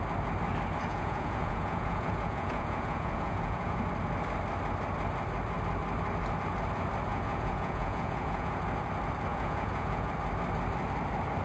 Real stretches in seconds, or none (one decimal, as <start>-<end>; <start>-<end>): 0.0-0.9; 3.8-7.1; 8.6-9.3; 10.1-11.4